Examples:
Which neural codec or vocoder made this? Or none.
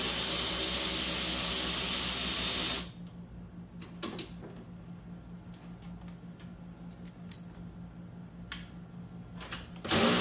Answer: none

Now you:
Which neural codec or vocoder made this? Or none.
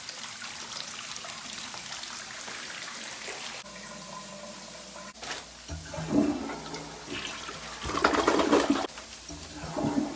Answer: none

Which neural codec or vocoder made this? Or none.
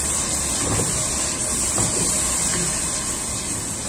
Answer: none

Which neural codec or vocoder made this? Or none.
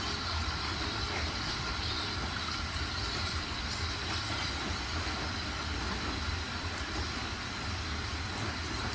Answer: none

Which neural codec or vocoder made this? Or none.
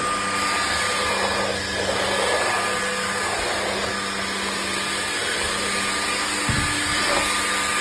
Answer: none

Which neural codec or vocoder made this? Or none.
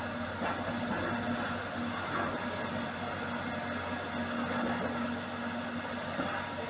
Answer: none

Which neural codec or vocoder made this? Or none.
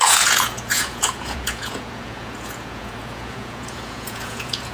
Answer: vocoder, Vocos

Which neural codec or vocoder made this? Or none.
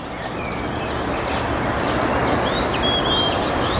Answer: none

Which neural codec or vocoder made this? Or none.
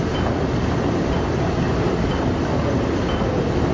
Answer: none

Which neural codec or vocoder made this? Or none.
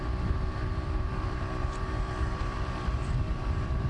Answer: vocoder, BigVGAN v2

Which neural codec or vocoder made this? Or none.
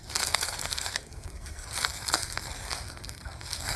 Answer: codec, SNAC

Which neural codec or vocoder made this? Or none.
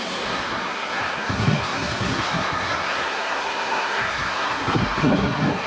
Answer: codec, SNAC